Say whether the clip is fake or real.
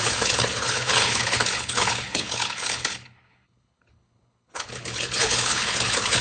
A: fake